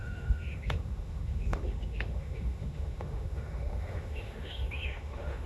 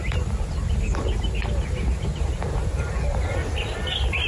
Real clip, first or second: second